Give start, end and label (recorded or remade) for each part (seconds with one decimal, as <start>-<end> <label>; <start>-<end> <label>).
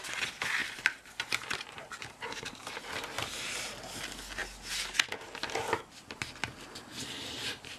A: 0.0-0.6 recorded; 0.6-2.9 remade; 2.9-7.8 recorded